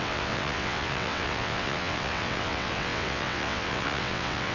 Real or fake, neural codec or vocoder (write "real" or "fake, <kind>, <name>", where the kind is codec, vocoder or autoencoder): fake, vocoder, WaveNeXt